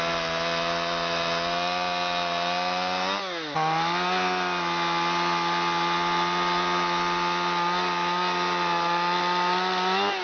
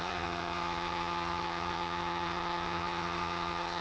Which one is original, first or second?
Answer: first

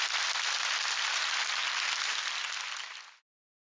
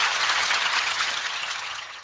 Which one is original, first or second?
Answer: first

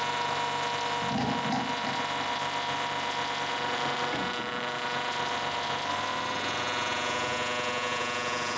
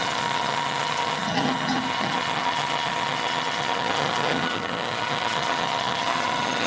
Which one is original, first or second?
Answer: first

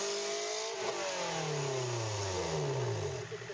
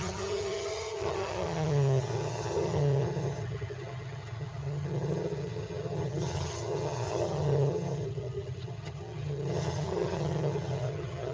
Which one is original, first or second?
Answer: first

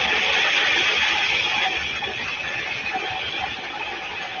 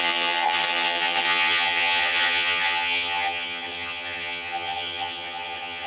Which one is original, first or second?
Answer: first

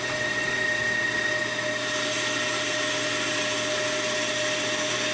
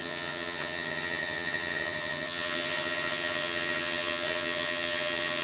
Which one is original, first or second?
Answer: first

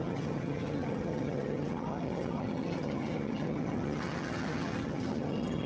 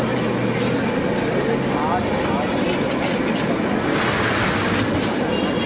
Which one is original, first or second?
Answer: second